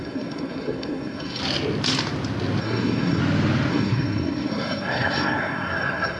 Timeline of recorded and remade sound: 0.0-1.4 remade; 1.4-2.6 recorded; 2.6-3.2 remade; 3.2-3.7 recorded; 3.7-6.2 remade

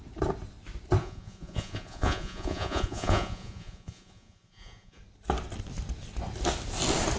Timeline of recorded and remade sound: 0.0-1.0 recorded; 1.0-5.0 remade; 5.0-7.2 recorded